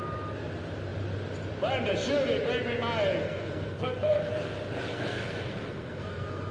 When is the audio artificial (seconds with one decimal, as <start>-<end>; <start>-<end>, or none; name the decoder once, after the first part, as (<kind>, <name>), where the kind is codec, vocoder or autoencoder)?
3.2-4.4 (codec, SNAC); 4.9-6.5